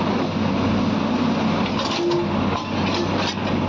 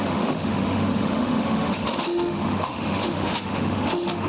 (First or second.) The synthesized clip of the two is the second